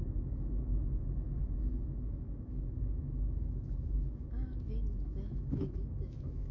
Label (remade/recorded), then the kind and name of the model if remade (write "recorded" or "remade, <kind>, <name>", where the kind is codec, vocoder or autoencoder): remade, autoencoder, DAC-VAE